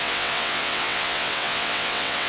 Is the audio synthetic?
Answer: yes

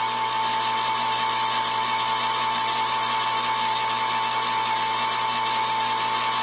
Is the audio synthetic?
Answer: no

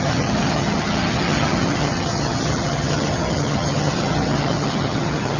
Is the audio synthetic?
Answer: yes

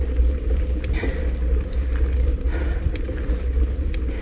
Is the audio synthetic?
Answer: no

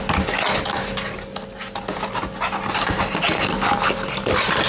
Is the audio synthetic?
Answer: no